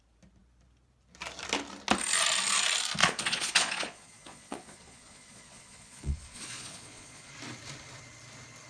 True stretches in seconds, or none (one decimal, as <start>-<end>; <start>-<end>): 0.0-3.0; 7.3-8.7